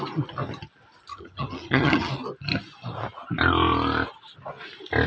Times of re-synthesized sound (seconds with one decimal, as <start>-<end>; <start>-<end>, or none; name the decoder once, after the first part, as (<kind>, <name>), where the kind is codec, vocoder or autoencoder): 1.1-2.1 (vocoder, HiFi-GAN)